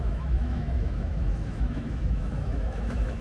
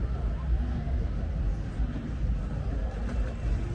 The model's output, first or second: first